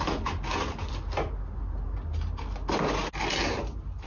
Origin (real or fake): real